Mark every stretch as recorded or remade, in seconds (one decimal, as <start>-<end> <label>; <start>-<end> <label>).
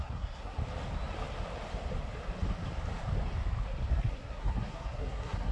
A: 0.0-0.6 remade; 0.6-3.9 recorded; 3.9-5.5 remade